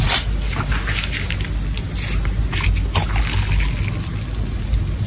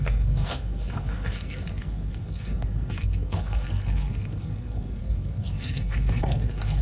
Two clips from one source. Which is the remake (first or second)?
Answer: second